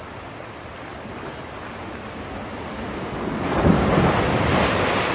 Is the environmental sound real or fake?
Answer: real